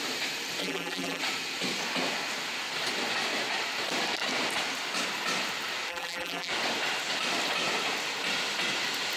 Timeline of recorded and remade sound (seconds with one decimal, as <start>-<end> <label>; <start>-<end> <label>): 0.0-0.6 recorded; 0.6-1.2 remade; 1.2-5.9 recorded; 5.9-6.5 remade; 6.5-9.2 recorded